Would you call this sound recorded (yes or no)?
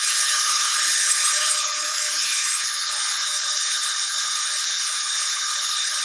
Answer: no